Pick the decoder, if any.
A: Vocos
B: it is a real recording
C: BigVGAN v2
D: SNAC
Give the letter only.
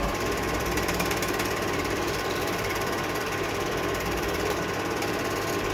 C